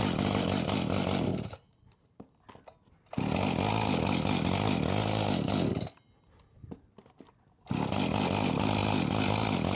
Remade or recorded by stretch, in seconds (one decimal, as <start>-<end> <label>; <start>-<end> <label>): 0.0-1.3 recorded; 1.3-2.3 remade; 2.3-9.8 recorded

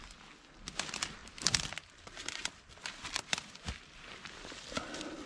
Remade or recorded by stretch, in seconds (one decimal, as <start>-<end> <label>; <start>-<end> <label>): 0.0-5.3 recorded

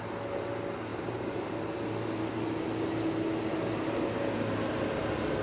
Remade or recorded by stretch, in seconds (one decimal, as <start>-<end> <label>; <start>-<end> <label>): 0.0-0.9 recorded; 0.9-1.6 remade; 1.6-5.4 recorded

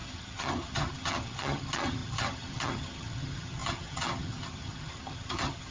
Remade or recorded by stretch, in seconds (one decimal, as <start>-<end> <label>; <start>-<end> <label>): 0.0-5.7 remade

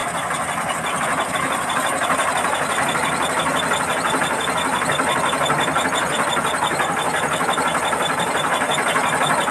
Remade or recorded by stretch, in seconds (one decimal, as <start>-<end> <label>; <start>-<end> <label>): 0.0-9.5 recorded

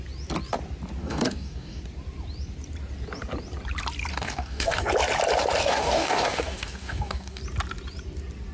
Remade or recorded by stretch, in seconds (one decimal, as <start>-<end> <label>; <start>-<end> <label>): 0.0-1.0 recorded; 1.0-1.8 remade; 1.8-4.1 recorded; 4.1-4.9 remade; 4.9-5.6 recorded; 5.6-7.4 remade; 7.4-8.5 recorded

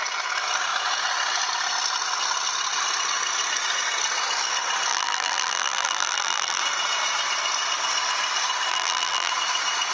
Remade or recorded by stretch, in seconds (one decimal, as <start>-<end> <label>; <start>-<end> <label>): 0.0-4.9 recorded; 4.9-6.6 remade; 6.6-8.7 recorded; 8.7-9.3 remade; 9.3-9.9 recorded